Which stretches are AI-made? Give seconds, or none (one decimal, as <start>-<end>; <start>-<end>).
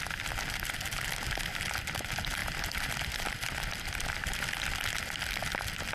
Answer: none